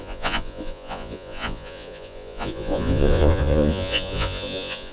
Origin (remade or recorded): remade